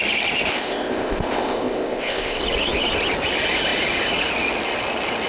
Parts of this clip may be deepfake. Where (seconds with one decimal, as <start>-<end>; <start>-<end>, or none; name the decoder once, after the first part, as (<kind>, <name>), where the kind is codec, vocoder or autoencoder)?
0.5-2.4 (codec, ZipCodec)